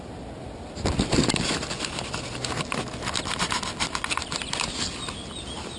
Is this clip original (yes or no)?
yes